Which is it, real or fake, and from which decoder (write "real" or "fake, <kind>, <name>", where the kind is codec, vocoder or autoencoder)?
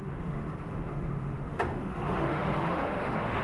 fake, autoencoder, DAC-VAE